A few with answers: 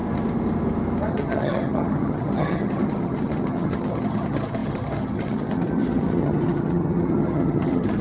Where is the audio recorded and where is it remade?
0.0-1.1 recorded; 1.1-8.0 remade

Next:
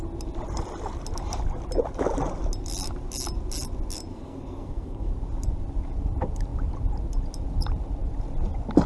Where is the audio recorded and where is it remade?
0.0-4.1 recorded; 4.1-5.1 remade; 5.1-8.9 recorded

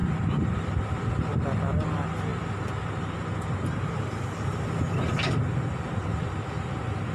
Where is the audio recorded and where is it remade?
0.0-1.1 remade; 1.1-7.1 recorded